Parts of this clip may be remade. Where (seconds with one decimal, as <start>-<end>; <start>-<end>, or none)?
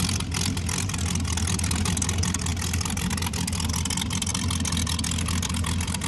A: none